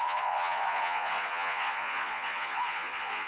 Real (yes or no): no